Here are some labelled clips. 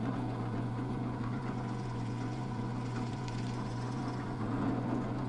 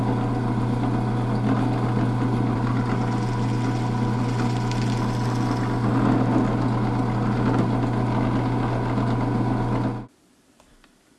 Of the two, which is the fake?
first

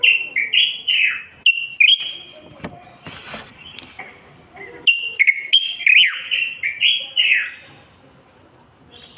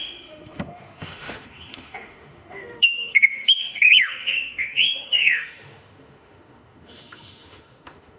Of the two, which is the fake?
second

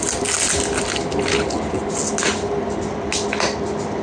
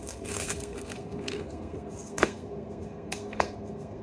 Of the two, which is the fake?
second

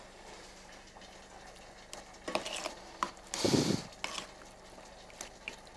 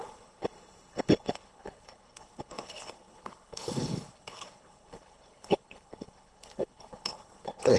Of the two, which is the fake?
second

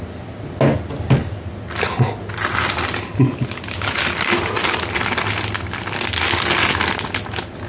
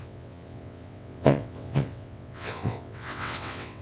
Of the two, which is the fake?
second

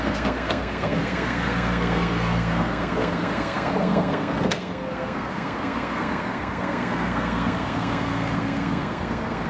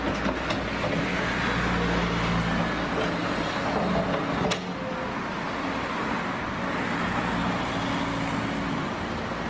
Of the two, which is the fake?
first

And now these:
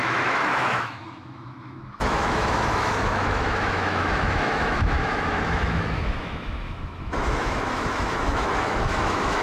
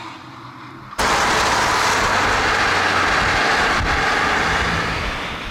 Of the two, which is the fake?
first